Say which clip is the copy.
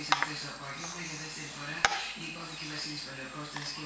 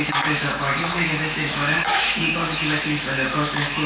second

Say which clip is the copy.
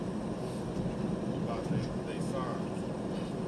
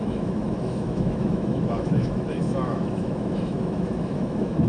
second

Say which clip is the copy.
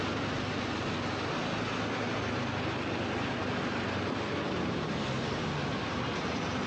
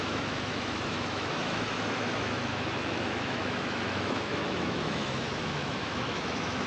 second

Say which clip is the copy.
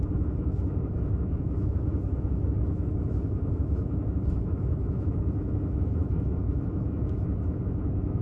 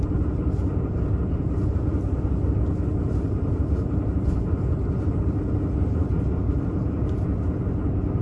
first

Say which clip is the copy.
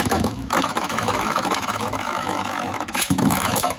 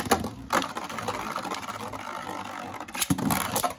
first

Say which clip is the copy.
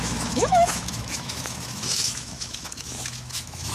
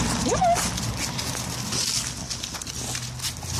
first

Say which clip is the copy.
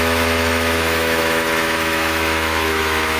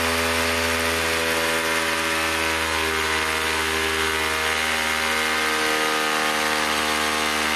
first